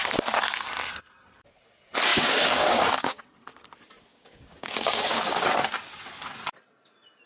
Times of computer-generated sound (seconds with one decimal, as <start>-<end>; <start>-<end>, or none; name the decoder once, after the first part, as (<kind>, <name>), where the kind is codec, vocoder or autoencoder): 2.1-3.2 (codec, DAC); 4.1-5.5